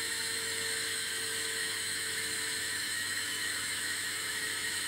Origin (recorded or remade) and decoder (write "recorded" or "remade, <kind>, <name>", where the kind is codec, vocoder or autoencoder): remade, autoencoder, DAC-VAE